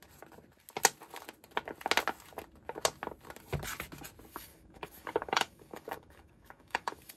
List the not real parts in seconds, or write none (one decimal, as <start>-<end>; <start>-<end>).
4.3-7.2